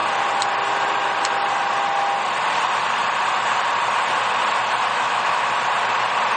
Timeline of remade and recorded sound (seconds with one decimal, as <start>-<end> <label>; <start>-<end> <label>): 0.0-4.9 recorded; 4.9-5.5 remade; 5.5-6.4 recorded